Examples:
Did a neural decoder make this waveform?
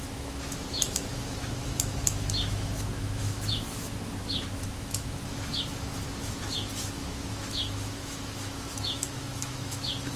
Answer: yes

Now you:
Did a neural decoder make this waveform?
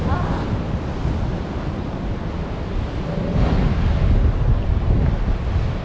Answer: no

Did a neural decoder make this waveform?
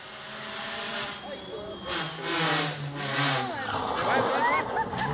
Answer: no